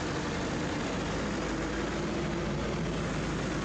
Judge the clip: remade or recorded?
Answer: recorded